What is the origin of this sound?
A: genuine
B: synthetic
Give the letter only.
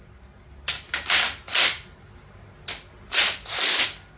A